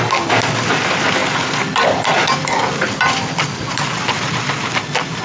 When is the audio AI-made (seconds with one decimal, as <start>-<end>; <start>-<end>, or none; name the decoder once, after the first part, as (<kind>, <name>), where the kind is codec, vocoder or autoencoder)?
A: none

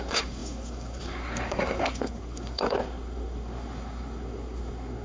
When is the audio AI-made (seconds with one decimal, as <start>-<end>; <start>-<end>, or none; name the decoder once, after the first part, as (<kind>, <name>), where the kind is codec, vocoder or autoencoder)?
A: 0.0-5.0 (codec, SNAC)

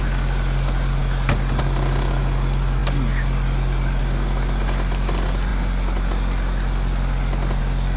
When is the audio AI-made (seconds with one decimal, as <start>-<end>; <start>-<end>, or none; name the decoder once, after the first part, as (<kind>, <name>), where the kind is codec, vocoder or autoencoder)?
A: none

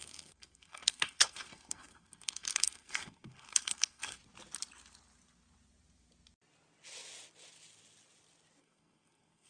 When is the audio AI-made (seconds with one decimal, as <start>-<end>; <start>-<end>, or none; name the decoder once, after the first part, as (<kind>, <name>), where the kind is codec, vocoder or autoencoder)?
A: 0.0-4.2 (codec, SNAC); 8.6-9.5

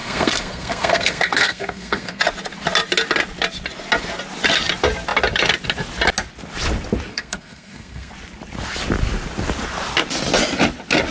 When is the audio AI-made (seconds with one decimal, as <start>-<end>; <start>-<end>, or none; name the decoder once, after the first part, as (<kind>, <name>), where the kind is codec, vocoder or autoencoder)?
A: 0.0-2.2 (codec, SNAC); 7.1-8.1

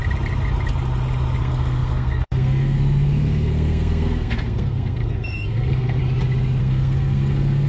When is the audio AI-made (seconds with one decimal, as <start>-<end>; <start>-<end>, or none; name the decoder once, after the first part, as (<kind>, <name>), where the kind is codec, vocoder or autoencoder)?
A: 1.4-6.0 (codec, SNAC); 6.6-7.7

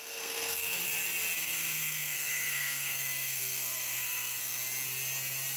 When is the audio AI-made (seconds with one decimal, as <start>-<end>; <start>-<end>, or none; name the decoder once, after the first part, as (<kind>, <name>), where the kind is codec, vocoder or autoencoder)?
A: 0.0-0.8 (codec, SNAC); 1.4-4.6